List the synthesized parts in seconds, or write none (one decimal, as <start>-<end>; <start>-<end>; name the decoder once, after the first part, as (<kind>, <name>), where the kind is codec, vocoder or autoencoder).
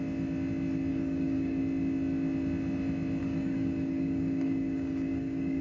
0.9-1.6 (codec, DAC); 3.2-5.6